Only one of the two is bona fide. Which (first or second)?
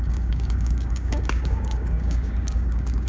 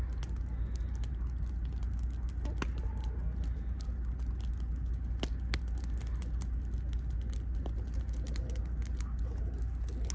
second